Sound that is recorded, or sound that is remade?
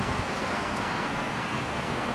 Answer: remade